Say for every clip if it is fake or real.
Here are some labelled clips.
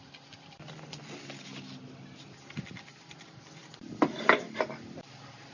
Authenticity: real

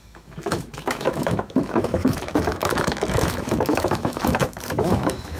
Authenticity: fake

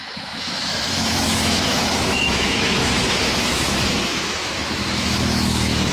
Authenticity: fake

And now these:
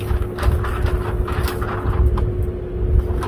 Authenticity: real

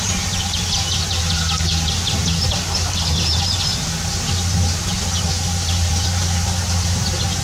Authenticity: real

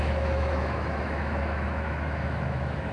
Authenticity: fake